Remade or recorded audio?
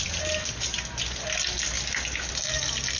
recorded